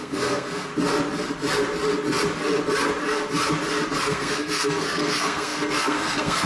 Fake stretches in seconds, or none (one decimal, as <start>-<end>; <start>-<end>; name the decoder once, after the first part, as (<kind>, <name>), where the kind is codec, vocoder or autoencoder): 0.0-0.7 (codec, SNAC); 3.9-6.5